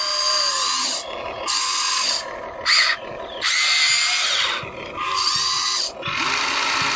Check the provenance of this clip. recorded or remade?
recorded